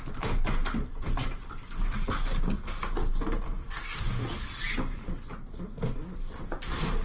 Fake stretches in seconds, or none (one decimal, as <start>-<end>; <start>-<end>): none

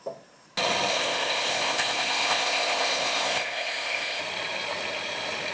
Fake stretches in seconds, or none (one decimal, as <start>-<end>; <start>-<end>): 0.9-4.2

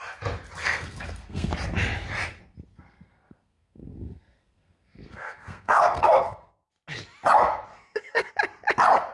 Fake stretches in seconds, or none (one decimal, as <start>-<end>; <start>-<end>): 0.6-1.5; 2.7-6.7; 7.7-8.3

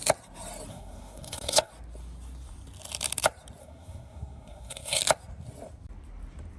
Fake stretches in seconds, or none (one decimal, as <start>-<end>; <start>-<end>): 0.7-1.7; 3.6-5.0

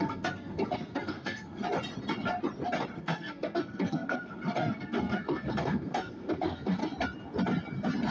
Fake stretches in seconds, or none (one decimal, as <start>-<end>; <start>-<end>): 0.0-1.6; 3.0-6.8